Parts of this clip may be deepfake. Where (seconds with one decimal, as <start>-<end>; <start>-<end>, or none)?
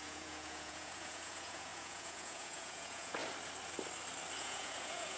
0.0-3.2; 4.4-5.2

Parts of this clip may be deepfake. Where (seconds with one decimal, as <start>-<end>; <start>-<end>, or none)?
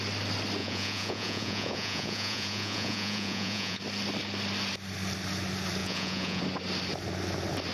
0.6-3.8; 5.8-6.4